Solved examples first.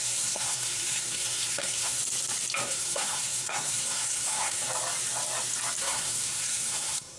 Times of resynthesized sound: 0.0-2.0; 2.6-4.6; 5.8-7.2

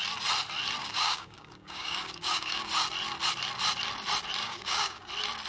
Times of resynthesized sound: 0.8-2.7; 4.4-5.1

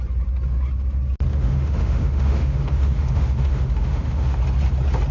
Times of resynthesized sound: 1.3-4.4